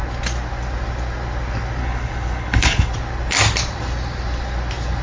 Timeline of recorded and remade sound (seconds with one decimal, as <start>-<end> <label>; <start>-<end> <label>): 0.0-1.8 recorded; 1.8-2.9 remade; 2.9-5.0 recorded